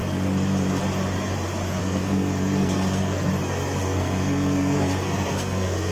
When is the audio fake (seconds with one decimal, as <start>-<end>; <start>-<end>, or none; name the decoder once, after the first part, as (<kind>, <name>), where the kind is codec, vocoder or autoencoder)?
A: 1.8-3.3 (codec, SNAC); 3.8-5.9